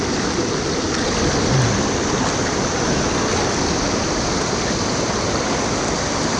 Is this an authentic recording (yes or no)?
yes